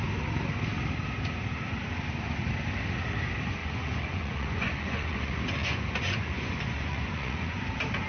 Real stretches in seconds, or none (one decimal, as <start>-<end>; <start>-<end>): 0.0-3.6; 7.6-8.1